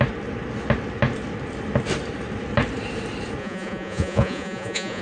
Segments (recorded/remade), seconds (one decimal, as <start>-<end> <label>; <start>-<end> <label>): 0.0-3.4 recorded; 3.4-5.0 remade

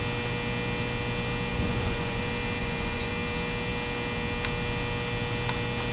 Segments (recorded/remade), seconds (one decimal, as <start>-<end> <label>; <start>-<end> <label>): 0.0-1.5 recorded; 1.5-2.2 remade; 2.2-2.6 recorded; 2.6-3.1 remade; 3.1-5.9 recorded

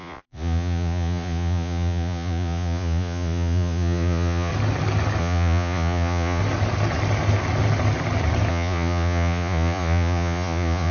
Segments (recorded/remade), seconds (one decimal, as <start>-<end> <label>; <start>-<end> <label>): 0.0-4.5 remade; 4.5-5.2 recorded; 5.2-6.4 remade; 6.4-8.5 recorded; 8.5-10.9 remade

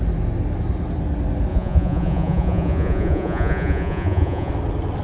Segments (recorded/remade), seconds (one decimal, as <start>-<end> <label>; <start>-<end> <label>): 0.0-1.5 recorded; 1.5-4.5 remade; 4.5-5.0 recorded

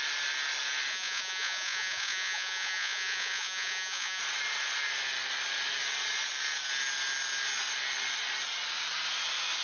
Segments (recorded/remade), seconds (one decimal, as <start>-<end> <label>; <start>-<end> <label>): 0.0-0.9 recorded; 0.9-4.2 remade; 4.2-9.6 recorded

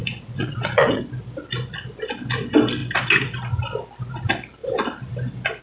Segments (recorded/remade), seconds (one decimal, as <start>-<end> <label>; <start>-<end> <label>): 0.0-1.0 remade; 1.0-5.6 recorded

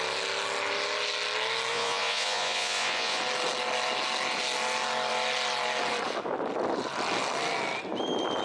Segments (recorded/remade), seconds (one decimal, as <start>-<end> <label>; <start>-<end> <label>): 0.0-1.7 recorded; 1.7-3.2 remade; 3.2-8.4 recorded